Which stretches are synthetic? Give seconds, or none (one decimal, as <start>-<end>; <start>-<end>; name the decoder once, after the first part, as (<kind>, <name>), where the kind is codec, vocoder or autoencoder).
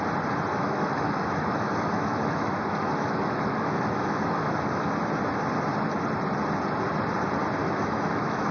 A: 0.5-4.9 (autoencoder, DAC-VAE); 7.6-8.5